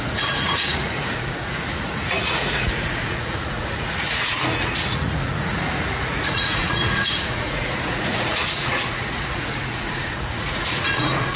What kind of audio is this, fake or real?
fake